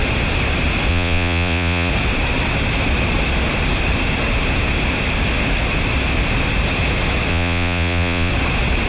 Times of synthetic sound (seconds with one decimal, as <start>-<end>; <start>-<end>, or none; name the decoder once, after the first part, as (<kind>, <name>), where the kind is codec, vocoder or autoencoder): 0.9-1.9 (vocoder, Vocos); 7.3-8.3